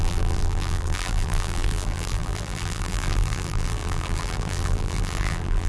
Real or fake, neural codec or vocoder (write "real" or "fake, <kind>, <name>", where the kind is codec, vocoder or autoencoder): fake, vocoder, BigVGAN v2